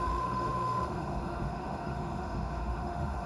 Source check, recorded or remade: remade